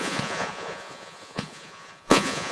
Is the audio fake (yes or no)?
yes